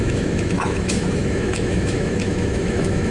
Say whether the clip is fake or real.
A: fake